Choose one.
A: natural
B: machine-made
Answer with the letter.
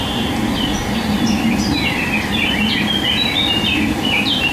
A